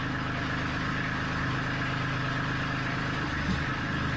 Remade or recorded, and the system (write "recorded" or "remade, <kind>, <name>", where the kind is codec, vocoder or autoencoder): recorded